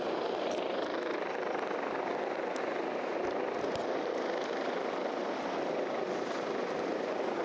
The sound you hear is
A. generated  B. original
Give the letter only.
B